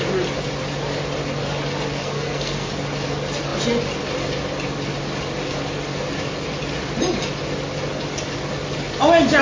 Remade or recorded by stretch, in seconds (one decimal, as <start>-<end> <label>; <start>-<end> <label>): 0.0-2.0 recorded; 2.0-2.7 remade; 2.7-9.4 recorded